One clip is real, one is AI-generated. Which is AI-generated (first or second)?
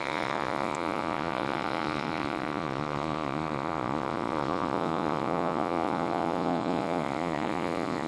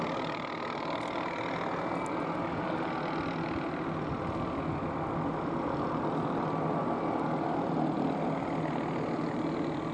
first